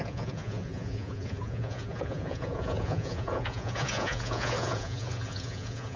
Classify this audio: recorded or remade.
remade